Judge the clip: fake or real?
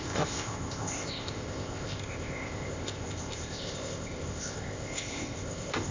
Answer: fake